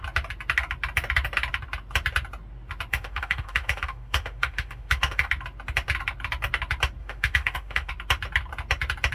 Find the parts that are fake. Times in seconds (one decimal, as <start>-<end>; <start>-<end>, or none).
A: 2.9-5.3; 7.0-7.9